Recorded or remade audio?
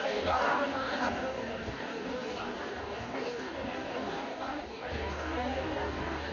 remade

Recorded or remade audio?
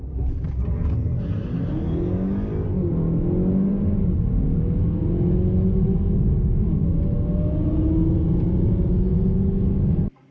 recorded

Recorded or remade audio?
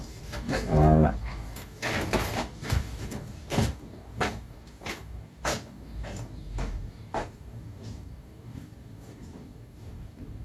remade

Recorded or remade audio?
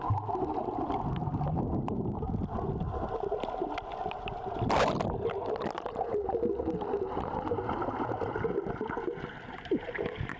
recorded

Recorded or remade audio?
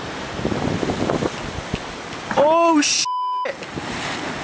recorded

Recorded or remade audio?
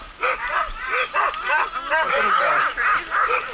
recorded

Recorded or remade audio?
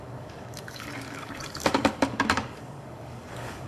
remade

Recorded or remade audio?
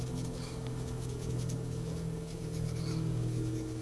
remade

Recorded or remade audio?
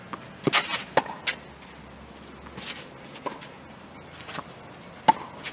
recorded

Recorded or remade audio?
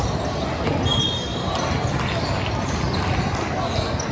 recorded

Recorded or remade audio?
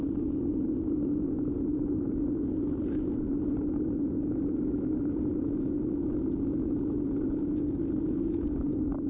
recorded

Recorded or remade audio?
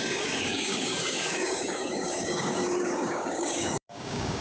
remade